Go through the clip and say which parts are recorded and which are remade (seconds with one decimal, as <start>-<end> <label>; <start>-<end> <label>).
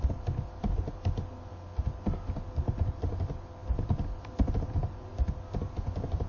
0.0-6.3 recorded